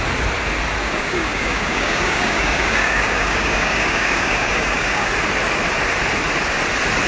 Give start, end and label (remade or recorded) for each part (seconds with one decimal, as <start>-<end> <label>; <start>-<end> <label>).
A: 0.0-0.8 recorded; 0.8-5.1 remade; 5.1-7.1 recorded